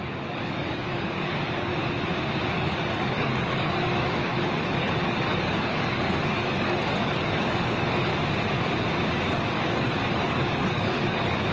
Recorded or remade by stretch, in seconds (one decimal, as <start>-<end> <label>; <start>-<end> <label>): 0.0-1.7 remade; 1.7-2.5 recorded; 2.5-8.1 remade; 8.1-9.1 recorded; 9.1-11.5 remade